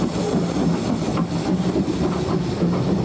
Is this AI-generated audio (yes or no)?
no